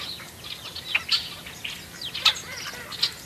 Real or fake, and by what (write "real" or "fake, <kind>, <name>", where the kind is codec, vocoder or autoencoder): real